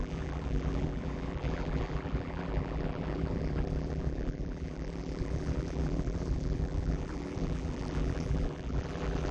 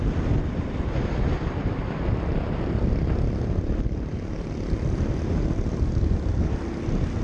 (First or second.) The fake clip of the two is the first